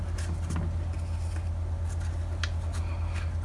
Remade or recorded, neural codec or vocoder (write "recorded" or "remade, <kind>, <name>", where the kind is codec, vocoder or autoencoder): recorded